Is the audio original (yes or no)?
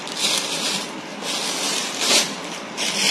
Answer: yes